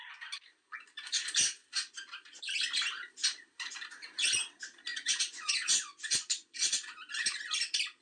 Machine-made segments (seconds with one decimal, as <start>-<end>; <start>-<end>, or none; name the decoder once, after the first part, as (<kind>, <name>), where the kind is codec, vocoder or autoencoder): 1.6-2.4 (vocoder, Vocos); 4.9-7.1